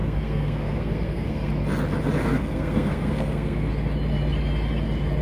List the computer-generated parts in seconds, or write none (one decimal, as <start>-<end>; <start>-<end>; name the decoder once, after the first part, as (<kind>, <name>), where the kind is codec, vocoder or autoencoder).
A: 0.0-1.5 (codec, SNAC); 2.2-3.7